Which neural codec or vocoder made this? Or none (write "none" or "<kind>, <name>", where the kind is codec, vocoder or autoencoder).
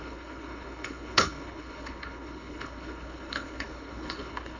codec, HILCodec